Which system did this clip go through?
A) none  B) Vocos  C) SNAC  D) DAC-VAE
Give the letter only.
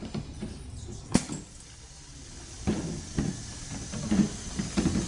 A